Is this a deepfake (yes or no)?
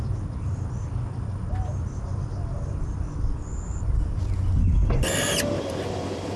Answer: yes